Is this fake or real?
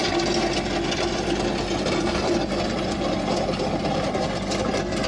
fake